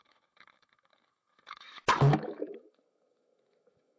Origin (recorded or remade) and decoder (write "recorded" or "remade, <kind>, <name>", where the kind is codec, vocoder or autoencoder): remade, autoencoder, DAC-VAE